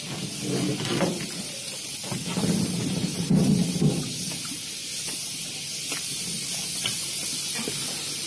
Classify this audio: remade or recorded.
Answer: recorded